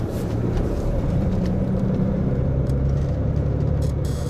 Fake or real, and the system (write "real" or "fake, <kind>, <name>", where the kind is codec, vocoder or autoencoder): fake, vocoder, BigVGAN v2